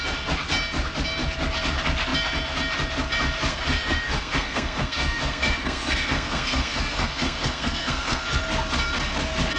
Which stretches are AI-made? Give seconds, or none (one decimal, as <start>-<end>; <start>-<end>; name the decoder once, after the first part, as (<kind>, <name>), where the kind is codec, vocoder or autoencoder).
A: 3.5-8.4 (codec, SNAC)

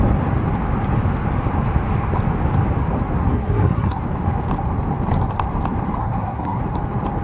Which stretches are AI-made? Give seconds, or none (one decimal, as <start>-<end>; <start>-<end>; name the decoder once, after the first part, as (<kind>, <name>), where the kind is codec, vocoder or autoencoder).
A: 3.2-4.0 (codec, SNAC); 6.0-6.6

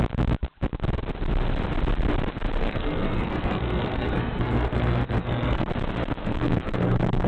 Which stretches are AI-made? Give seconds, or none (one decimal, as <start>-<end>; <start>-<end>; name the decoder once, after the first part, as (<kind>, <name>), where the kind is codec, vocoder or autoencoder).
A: 2.6-5.7 (codec, SNAC); 6.2-7.3

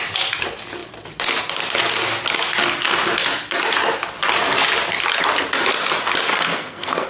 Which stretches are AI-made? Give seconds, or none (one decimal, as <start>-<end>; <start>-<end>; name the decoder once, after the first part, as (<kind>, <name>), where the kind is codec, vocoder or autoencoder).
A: 6.3-7.1 (codec, SNAC)

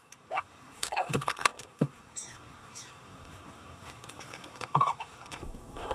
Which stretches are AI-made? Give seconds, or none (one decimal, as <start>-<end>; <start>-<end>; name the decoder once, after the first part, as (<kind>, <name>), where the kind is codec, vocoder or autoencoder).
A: 0.0-5.9 (codec, SNAC)

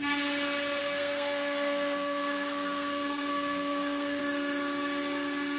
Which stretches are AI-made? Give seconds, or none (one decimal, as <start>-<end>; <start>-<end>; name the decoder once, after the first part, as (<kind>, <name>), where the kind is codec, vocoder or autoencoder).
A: 0.8-4.2 (codec, SNAC)

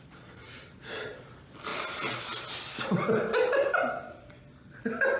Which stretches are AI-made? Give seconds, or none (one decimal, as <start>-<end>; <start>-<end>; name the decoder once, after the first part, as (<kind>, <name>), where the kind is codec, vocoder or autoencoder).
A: none